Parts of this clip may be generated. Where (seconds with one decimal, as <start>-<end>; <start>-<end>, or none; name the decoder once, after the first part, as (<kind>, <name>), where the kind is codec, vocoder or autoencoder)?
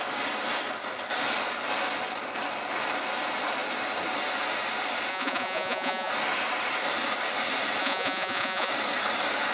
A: 5.1-6.1 (vocoder, Vocos); 7.8-8.7